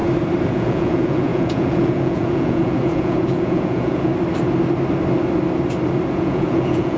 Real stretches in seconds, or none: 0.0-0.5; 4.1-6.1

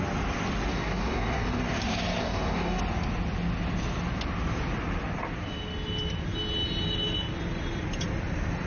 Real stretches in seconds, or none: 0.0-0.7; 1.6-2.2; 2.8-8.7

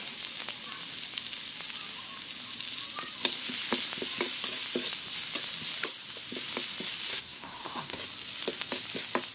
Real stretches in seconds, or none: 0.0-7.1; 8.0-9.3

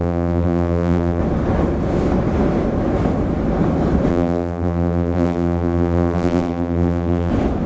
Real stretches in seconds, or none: 1.2-4.1; 7.3-7.7

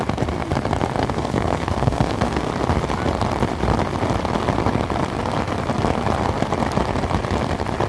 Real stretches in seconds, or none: 0.0-1.0; 2.5-7.9

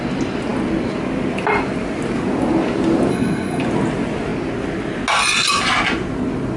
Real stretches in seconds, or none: 0.0-3.1; 3.6-6.6

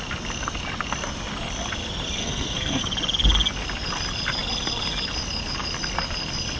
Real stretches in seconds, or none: 0.0-2.2; 2.8-6.6

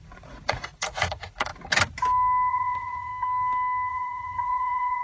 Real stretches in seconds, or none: 1.5-2.5; 3.1-3.9